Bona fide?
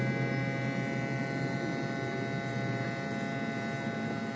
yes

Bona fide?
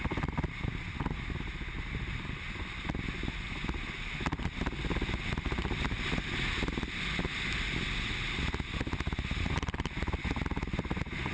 yes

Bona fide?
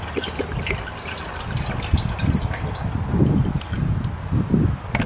yes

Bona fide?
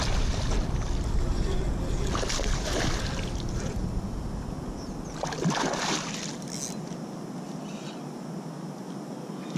yes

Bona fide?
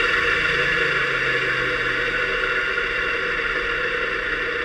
yes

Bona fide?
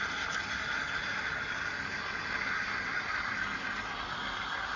yes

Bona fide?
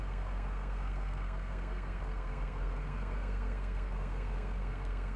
no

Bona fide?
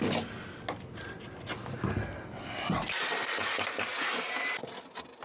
yes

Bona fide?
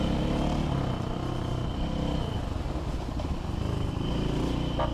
yes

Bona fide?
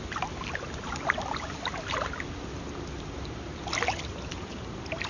yes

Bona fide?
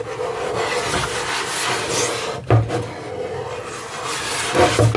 yes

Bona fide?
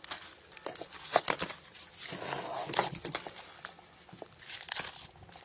yes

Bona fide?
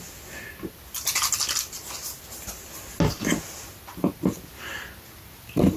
yes